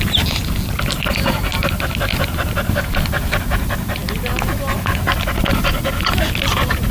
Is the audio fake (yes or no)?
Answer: no